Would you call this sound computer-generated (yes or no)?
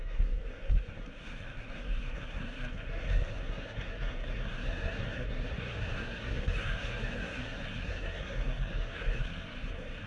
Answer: yes